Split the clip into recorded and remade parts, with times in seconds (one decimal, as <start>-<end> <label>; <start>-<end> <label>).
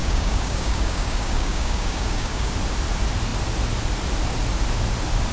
0.0-2.5 remade; 2.5-5.3 recorded